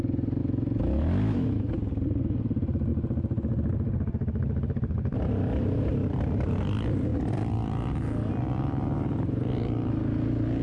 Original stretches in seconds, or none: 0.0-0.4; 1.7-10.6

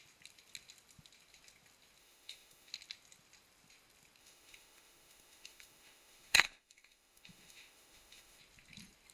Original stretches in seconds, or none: 0.0-2.0; 2.7-4.2; 8.4-9.1

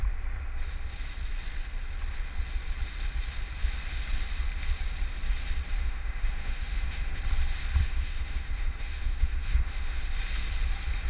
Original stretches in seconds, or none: 0.0-5.8; 7.1-7.8; 10.1-11.1

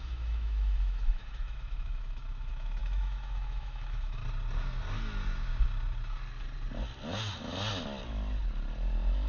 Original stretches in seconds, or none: 4.2-9.3

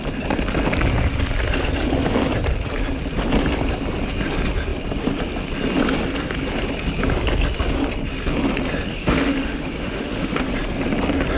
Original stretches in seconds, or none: 0.0-8.9; 10.5-11.4

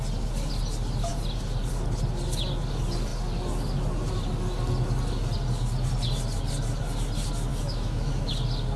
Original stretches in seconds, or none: 0.0-7.5; 8.3-8.8